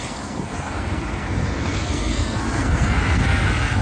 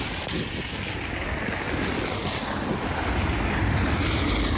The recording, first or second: second